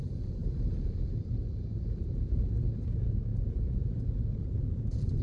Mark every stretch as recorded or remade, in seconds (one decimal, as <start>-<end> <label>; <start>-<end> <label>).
0.0-1.7 recorded; 1.7-2.6 remade; 2.6-3.3 recorded; 3.3-5.2 remade